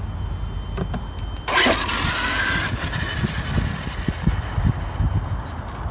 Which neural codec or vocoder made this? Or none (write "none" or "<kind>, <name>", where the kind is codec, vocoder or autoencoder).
none